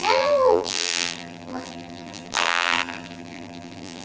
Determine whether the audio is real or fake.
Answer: fake